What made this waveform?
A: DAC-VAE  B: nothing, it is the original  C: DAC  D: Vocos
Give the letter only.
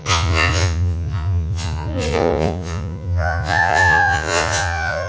D